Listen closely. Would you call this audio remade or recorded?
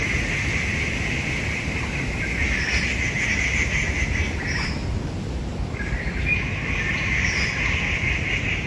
recorded